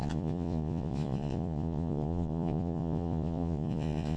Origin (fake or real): fake